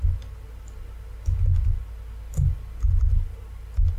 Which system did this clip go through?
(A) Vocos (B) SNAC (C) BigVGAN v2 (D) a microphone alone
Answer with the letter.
D